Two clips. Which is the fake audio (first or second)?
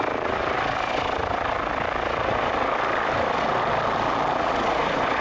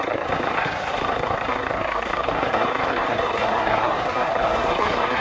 second